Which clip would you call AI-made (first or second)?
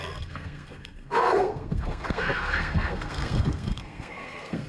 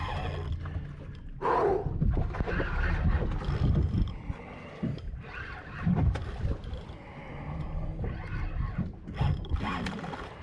first